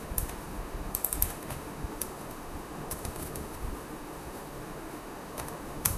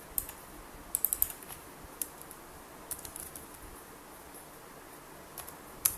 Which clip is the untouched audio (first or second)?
second